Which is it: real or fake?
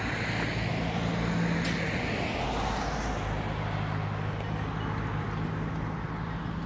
real